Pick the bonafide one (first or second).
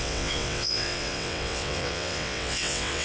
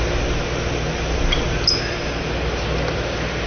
second